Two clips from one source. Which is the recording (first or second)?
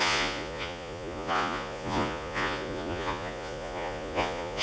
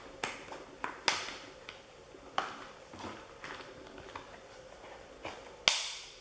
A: second